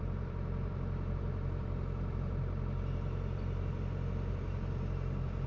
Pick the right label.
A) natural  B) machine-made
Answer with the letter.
B